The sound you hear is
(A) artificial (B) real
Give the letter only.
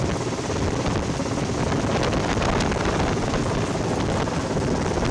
B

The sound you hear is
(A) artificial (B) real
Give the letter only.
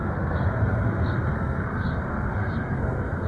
A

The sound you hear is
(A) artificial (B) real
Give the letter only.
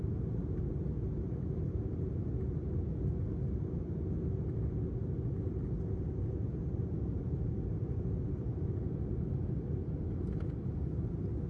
B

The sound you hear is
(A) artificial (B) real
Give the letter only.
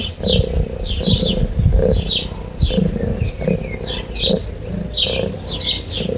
B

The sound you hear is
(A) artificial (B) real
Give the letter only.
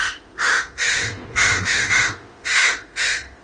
A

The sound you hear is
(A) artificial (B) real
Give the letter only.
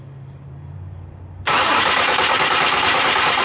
A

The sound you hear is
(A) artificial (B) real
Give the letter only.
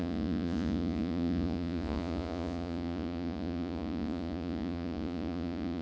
A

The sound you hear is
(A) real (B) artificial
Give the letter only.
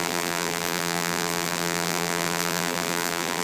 B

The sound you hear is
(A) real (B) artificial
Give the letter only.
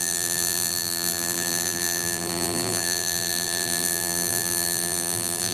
B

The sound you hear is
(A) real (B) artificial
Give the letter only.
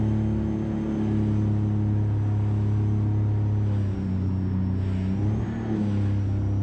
A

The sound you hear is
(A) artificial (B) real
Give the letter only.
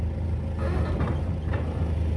B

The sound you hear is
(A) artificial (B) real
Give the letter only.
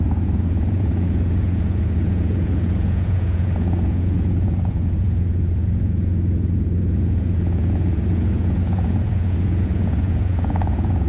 A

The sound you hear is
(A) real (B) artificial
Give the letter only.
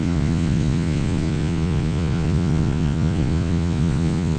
B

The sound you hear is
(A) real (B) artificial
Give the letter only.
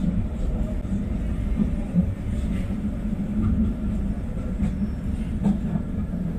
A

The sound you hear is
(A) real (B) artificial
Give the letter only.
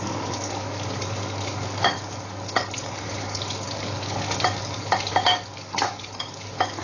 B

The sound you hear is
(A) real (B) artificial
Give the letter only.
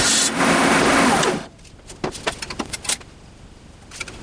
A